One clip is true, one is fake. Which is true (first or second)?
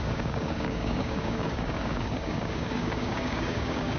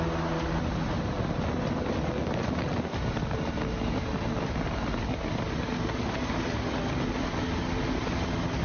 second